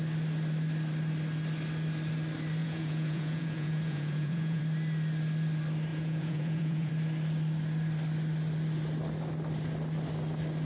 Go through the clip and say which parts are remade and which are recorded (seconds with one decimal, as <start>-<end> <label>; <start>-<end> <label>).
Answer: 0.0-2.6 recorded; 2.6-4.6 remade; 4.6-5.9 recorded; 5.9-6.9 remade; 6.9-10.6 recorded